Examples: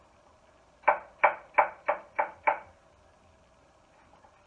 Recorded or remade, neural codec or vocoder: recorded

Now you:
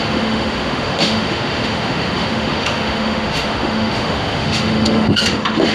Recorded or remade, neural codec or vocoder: remade, autoencoder, DAC-VAE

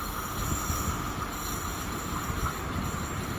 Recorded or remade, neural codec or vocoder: recorded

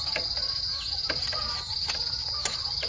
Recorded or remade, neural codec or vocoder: recorded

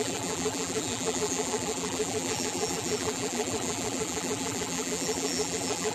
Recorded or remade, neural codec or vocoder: remade, vocoder, BigVGAN v2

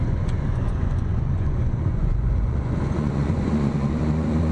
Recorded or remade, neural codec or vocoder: remade, vocoder, Vocos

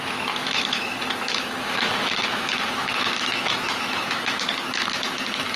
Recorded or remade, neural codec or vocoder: remade, autoencoder, DAC-VAE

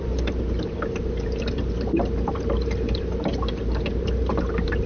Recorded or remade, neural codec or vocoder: remade, vocoder, BigVGAN v2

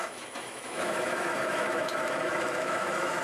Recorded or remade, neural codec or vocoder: remade, autoencoder, DAC-VAE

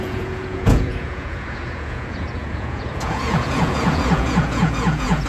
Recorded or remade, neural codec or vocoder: remade, vocoder, Vocos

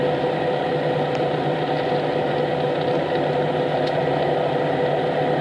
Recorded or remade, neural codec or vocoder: recorded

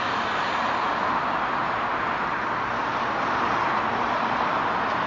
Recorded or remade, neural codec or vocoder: recorded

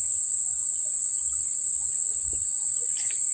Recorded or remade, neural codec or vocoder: recorded